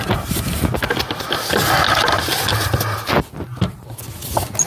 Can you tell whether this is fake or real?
real